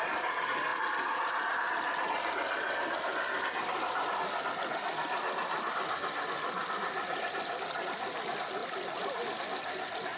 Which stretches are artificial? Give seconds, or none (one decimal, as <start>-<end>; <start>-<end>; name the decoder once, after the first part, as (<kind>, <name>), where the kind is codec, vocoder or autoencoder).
6.6-7.2 (vocoder, BigVGAN v2); 8.6-10.2